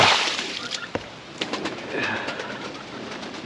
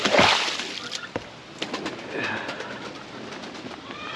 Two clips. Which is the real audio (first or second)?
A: second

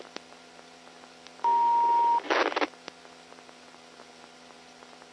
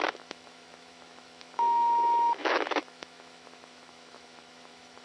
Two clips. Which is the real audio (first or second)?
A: first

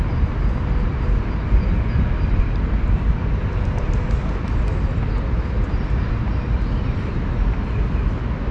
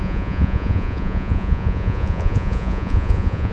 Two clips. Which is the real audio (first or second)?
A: first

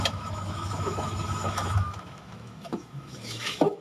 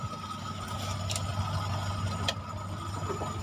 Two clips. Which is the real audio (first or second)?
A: second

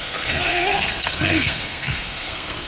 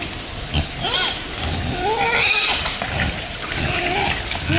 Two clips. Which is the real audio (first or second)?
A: second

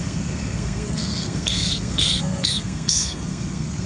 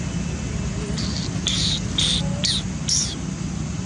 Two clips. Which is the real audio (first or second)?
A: second